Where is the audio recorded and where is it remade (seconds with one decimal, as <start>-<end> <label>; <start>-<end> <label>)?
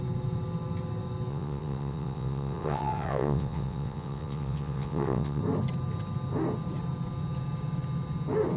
0.0-1.3 recorded; 1.3-5.4 remade; 5.4-8.6 recorded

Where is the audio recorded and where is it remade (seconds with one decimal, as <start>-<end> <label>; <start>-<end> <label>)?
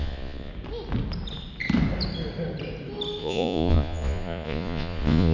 0.0-0.5 remade; 0.5-3.2 recorded; 3.2-5.3 remade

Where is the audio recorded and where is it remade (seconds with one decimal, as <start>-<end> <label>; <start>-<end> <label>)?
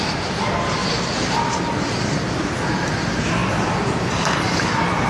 0.0-0.8 remade; 0.8-2.9 recorded; 2.9-5.1 remade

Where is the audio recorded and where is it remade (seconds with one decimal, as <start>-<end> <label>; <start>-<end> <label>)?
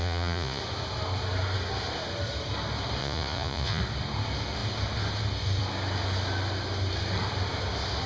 0.0-0.6 remade; 0.6-3.0 recorded; 3.0-3.8 remade; 3.8-8.1 recorded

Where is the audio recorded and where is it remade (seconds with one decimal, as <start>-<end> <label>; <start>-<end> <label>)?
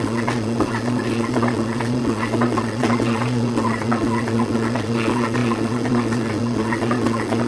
0.0-7.5 remade